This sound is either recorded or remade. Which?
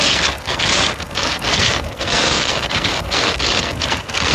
remade